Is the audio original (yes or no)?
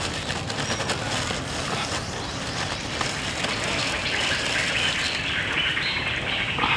yes